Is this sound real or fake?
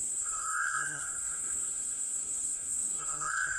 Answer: fake